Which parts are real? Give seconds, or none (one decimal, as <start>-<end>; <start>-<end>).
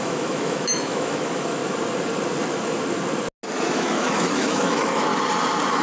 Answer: 1.6-3.7; 5.1-5.8